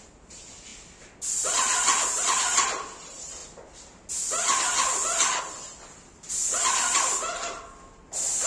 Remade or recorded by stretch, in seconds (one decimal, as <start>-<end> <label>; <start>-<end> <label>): 0.0-8.5 recorded